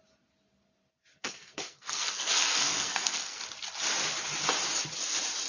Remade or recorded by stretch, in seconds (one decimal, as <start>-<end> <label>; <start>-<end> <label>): 0.0-1.1 recorded; 1.1-3.4 remade; 3.4-5.5 recorded